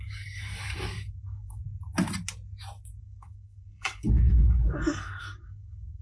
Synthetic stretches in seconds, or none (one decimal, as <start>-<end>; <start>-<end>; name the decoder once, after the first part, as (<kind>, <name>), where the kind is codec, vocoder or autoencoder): 0.0-1.6 (codec, DAC); 3.0-6.0